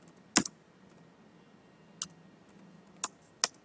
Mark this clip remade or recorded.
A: recorded